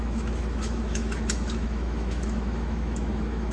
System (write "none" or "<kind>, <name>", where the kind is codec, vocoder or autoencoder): autoencoder, DAC-VAE